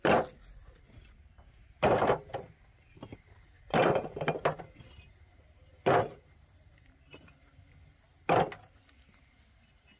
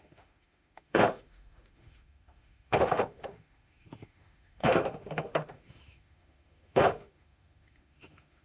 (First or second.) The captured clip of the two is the first